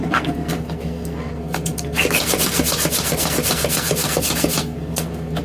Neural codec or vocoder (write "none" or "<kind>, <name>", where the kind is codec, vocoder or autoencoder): codec, SNAC